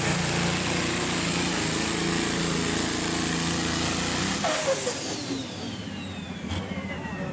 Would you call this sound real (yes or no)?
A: yes